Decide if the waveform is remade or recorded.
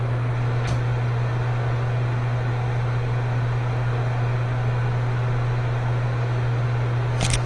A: recorded